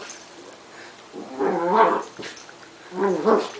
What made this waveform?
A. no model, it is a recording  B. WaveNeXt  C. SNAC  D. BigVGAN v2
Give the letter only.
A